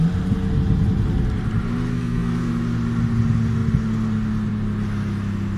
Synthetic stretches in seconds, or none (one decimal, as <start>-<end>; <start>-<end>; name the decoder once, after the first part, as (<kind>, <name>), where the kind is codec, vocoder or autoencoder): 1.9-2.5 (codec, SNAC)